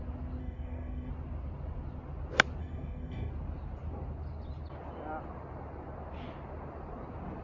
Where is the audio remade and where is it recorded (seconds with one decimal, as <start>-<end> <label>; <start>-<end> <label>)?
0.0-0.4 recorded; 0.4-1.1 remade; 1.1-2.6 recorded; 2.6-3.3 remade; 3.3-7.4 recorded